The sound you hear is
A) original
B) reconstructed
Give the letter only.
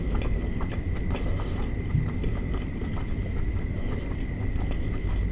A